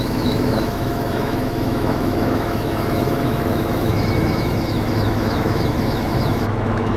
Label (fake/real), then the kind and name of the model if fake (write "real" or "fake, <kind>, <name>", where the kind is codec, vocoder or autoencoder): fake, autoencoder, DAC-VAE